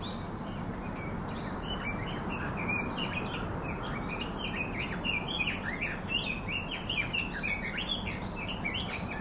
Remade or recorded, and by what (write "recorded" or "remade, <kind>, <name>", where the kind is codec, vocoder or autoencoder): recorded